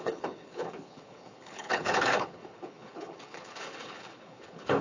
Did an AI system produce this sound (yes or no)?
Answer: yes